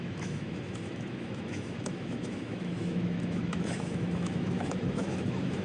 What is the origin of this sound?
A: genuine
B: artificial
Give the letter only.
B